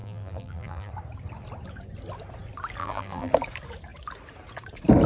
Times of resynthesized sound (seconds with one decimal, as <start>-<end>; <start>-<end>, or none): 0.0-0.9; 2.8-3.3